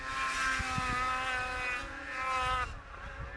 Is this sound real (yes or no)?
yes